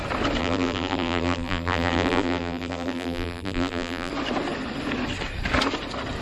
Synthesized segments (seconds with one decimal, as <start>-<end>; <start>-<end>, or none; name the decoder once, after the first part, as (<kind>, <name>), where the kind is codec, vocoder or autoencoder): 0.4-4.1 (vocoder, BigVGAN v2)